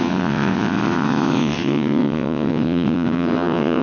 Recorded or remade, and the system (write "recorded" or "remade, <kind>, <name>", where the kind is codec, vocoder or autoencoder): remade, vocoder, WaveNeXt